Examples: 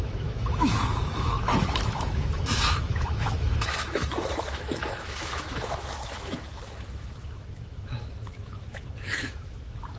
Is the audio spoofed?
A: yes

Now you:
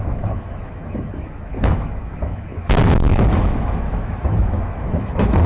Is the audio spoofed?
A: yes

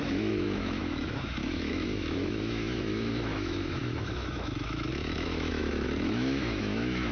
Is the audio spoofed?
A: yes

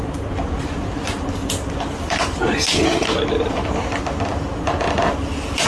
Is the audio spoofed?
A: no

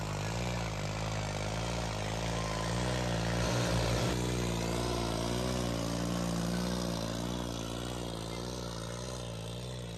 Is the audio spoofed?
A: no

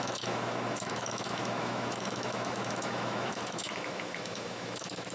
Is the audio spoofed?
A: yes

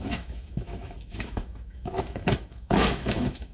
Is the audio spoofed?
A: yes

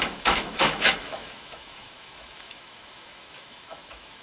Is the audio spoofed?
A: yes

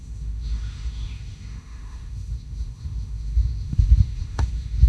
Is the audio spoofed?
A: yes